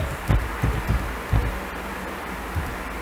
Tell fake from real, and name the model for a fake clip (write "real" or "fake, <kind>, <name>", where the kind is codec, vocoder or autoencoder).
real